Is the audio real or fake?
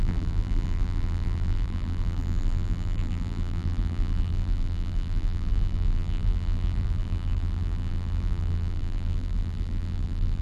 fake